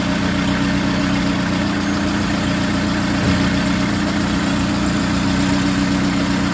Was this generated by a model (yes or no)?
no